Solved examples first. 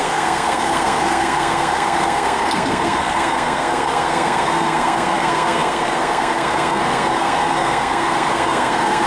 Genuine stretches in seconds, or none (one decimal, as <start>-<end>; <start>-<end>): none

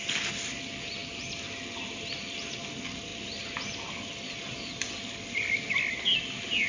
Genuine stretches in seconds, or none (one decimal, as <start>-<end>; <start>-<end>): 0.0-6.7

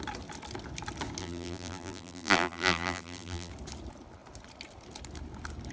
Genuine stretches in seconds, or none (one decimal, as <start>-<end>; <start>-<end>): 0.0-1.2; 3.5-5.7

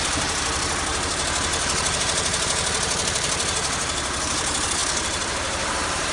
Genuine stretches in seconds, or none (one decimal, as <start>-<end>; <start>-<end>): none

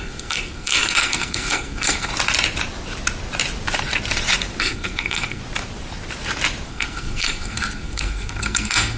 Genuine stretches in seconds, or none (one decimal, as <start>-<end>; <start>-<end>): 2.1-4.6; 5.4-6.7

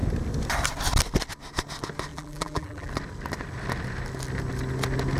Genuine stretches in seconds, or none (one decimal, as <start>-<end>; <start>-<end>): 0.0-2.1; 2.9-5.2